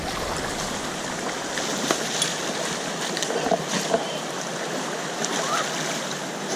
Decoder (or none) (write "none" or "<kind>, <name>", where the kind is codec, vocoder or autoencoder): none